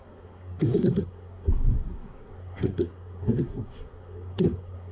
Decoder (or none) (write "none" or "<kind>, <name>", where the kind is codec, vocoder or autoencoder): codec, SNAC